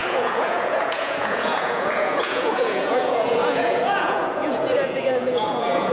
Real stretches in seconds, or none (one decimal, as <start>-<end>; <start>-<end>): none